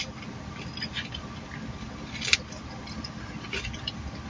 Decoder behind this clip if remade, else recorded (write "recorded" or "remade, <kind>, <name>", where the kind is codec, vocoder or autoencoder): recorded